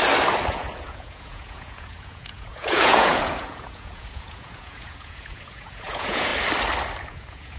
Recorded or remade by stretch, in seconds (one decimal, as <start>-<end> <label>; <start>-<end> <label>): 0.0-0.5 recorded; 0.5-6.3 remade; 6.3-7.1 recorded; 7.1-7.6 remade